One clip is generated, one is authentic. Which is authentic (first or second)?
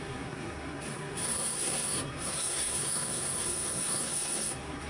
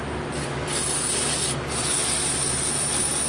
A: second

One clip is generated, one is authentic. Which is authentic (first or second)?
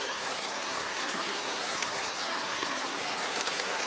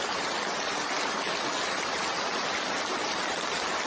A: second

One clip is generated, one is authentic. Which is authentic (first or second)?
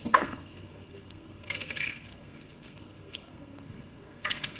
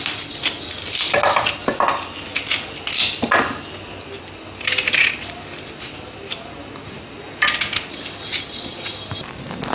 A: second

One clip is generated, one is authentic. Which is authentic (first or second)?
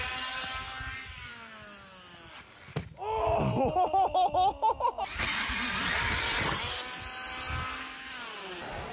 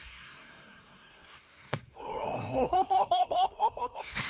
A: first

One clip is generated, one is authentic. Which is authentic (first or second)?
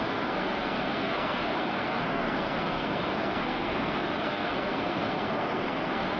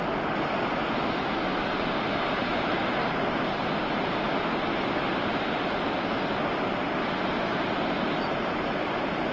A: second